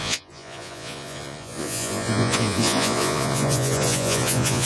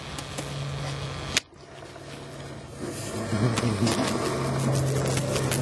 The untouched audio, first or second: second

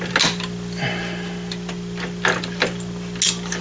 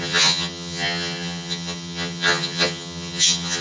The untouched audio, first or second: first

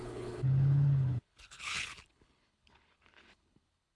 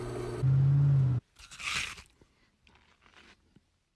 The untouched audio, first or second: second